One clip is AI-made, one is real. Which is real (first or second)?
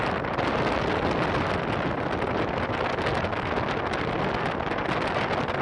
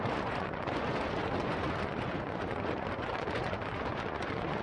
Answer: first